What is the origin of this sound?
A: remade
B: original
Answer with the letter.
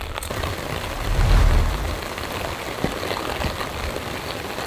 B